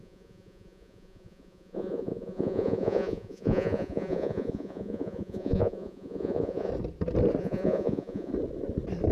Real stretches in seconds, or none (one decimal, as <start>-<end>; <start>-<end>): 6.7-7.4; 8.3-9.1